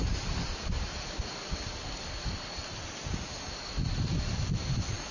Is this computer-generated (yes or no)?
no